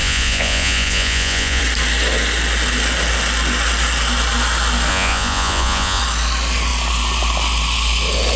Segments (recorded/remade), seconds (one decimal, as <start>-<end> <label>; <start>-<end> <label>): 0.0-1.6 remade; 1.6-4.9 recorded; 4.9-6.0 remade; 6.0-8.4 recorded